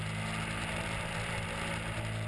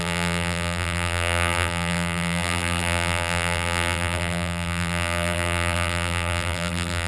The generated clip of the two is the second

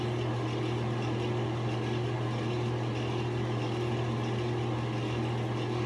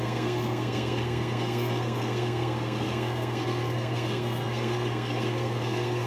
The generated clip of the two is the second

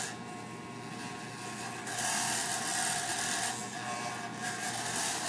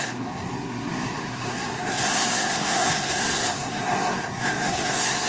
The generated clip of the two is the second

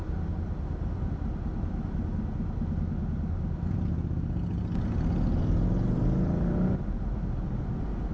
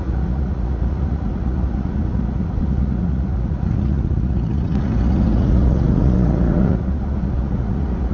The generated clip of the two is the second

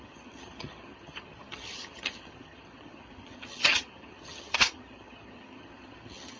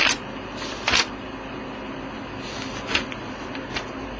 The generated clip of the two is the first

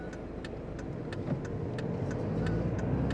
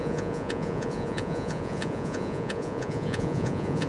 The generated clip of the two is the second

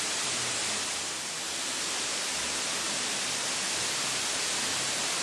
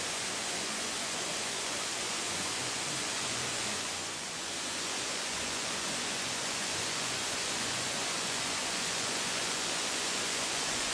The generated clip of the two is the second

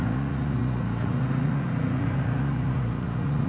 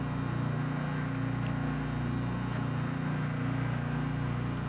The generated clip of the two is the first